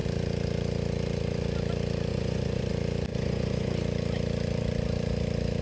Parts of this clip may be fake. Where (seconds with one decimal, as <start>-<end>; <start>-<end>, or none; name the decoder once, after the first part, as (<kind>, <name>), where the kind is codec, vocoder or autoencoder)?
2.1-2.7 (vocoder, Vocos); 3.1-3.7